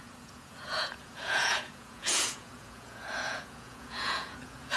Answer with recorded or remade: remade